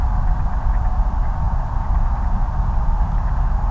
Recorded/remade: recorded